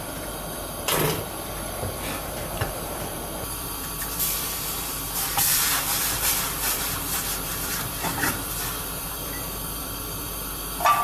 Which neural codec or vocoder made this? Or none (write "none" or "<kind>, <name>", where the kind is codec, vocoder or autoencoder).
vocoder, BigVGAN v2